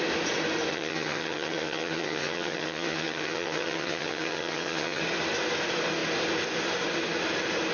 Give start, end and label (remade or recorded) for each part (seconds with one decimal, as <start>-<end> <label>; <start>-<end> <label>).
0.0-0.7 recorded; 0.7-5.0 remade; 5.0-7.7 recorded